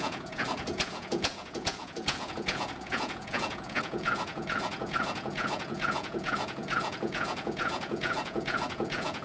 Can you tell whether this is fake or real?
fake